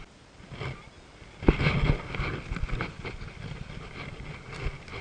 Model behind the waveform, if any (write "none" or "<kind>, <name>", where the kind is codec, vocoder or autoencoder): none